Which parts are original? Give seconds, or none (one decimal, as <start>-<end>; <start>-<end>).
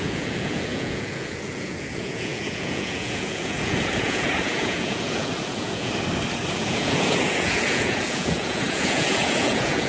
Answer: 5.9-6.5